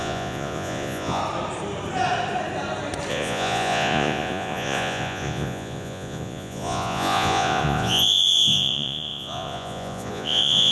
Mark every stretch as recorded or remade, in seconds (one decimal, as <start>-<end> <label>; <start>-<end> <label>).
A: 0.0-1.2 remade; 1.2-3.1 recorded; 3.1-10.7 remade